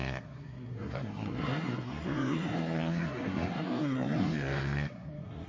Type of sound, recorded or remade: remade